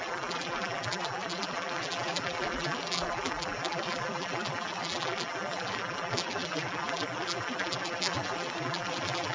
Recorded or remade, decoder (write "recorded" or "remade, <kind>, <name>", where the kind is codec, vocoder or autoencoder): remade, vocoder, BigVGAN v2